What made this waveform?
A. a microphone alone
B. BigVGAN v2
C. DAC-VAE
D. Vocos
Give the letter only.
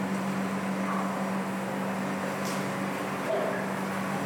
A